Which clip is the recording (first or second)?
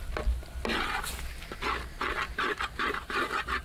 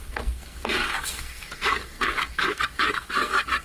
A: first